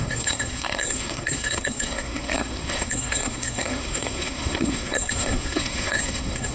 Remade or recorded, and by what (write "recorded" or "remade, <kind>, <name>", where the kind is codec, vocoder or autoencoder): remade, codec, SNAC